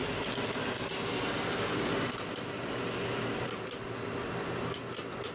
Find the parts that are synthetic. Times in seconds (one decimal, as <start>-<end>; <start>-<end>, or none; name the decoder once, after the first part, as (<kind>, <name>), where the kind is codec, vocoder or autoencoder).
none